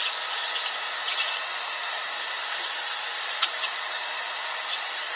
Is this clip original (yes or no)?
no